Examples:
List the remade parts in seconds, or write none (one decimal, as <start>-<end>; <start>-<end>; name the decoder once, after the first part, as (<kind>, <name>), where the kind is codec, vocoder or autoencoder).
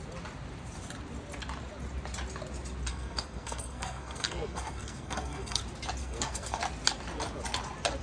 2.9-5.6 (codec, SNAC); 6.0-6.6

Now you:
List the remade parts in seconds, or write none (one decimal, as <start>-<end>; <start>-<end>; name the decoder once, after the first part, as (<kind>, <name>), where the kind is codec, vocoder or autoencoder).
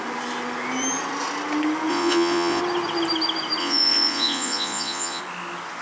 1.9-2.6 (vocoder, Vocos); 3.6-5.2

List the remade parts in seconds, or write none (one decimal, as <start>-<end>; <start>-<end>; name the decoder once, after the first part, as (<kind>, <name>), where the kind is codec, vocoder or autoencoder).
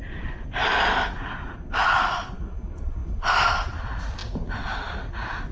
none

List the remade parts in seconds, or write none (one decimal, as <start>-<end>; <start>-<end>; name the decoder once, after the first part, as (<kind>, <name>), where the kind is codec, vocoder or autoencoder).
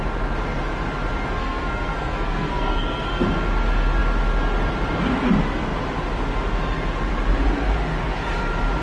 1.4-3.1 (codec, SNAC)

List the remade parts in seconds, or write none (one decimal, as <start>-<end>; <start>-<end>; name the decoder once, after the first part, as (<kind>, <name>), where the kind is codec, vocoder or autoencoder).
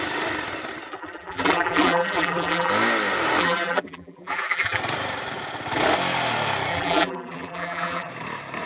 0.9-2.7 (vocoder, BigVGAN v2); 3.4-4.8; 6.7-8.1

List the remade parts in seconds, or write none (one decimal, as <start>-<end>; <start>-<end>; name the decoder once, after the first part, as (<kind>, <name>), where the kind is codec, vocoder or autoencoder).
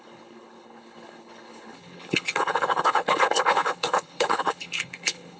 0.0-5.4 (codec, HILCodec)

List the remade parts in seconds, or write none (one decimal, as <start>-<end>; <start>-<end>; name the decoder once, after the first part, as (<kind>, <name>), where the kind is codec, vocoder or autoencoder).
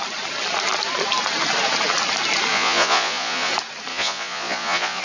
2.5-3.5 (vocoder, Vocos); 3.9-5.0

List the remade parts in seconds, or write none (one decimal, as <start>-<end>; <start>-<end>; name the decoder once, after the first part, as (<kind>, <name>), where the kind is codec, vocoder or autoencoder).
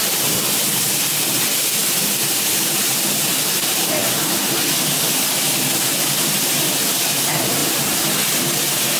7.6-8.4 (vocoder, BigVGAN v2)